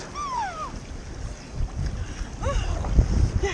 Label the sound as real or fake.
real